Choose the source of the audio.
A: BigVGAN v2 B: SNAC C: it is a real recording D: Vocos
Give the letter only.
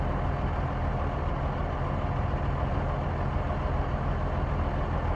C